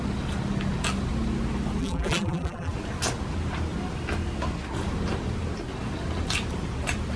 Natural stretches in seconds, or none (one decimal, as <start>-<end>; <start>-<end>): 0.0-1.8; 2.7-7.2